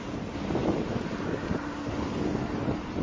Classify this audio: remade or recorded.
recorded